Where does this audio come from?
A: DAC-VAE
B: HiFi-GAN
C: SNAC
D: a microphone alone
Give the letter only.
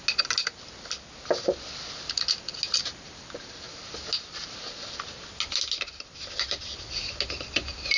D